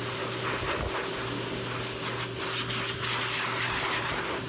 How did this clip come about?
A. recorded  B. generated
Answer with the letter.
A